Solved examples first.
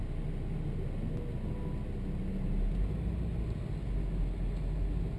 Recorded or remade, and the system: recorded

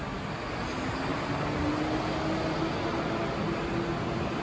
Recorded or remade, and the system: recorded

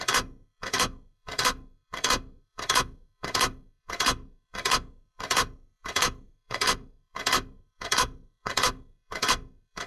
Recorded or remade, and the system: remade, codec, SNAC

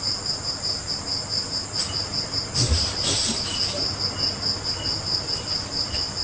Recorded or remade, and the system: recorded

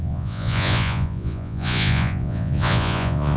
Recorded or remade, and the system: remade, vocoder, Vocos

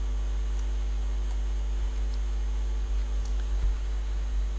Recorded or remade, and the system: recorded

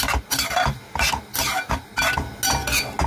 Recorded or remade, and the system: recorded